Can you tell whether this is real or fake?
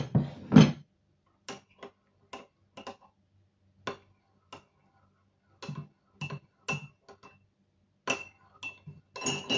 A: real